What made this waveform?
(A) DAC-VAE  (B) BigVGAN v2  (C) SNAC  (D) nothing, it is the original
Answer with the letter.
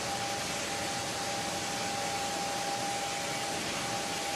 D